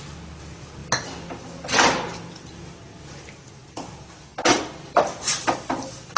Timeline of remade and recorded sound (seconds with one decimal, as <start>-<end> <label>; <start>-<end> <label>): 0.0-6.2 recorded